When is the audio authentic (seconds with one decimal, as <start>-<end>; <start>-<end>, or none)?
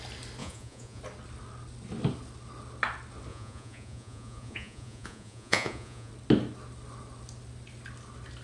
0.0-0.4; 1.0-3.3; 6.1-8.4